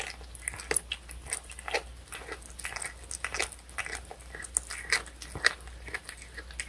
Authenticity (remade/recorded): recorded